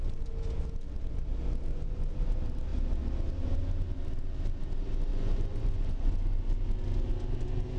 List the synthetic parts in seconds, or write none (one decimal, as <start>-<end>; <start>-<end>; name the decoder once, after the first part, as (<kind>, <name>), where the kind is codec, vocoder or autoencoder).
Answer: 1.7-2.3 (vocoder, Vocos); 5.1-6.1